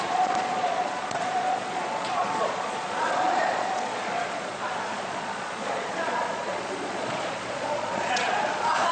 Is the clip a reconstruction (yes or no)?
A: yes